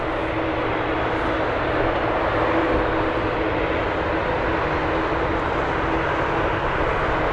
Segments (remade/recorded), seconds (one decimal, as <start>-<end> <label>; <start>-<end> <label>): 0.0-7.3 recorded